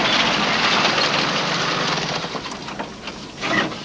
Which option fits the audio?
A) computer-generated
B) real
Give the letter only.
B